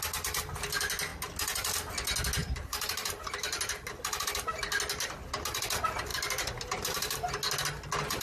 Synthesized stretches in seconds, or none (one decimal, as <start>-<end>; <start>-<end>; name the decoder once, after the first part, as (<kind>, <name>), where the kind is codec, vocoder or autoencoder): 2.4-3.7 (vocoder, BigVGAN v2); 6.1-7.3